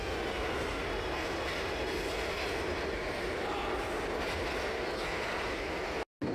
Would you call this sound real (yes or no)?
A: yes